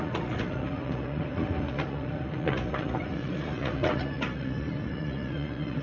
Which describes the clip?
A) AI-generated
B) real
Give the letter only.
A